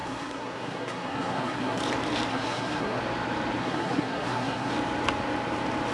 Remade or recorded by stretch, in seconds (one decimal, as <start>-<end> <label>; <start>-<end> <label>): 0.0-1.8 remade; 1.8-2.3 recorded; 2.3-3.0 remade; 3.0-3.6 recorded; 3.6-4.7 remade; 4.7-5.9 recorded